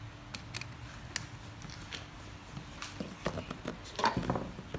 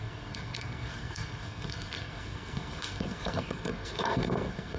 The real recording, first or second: first